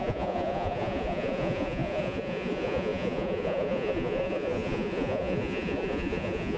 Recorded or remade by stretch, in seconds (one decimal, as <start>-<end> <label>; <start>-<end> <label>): 0.0-6.6 remade